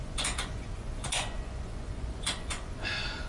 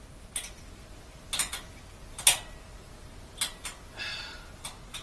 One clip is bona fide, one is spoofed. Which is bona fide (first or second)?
second